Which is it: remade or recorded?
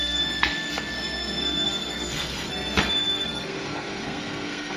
remade